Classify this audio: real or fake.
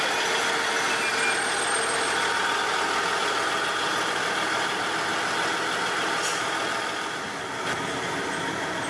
real